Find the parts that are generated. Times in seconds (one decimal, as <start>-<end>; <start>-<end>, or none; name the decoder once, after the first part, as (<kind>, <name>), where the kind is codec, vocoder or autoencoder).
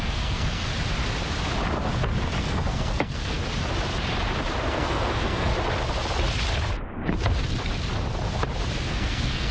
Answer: 0.0-0.7 (codec, SNAC); 2.4-3.4; 4.7-5.5; 8.9-9.5